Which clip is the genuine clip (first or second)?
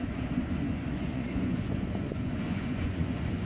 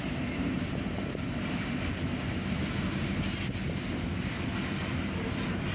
second